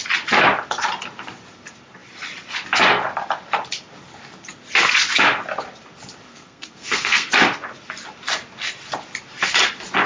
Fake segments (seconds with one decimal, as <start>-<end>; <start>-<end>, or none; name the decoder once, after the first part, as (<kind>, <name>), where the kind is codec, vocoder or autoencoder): 6.3-7.3 (codec, SNAC)